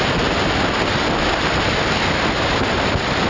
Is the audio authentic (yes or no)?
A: yes